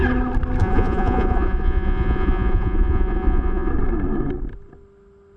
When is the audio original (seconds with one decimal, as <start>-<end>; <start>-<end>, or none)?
0.0-0.6; 3.7-5.4